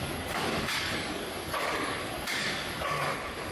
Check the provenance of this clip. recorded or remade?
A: remade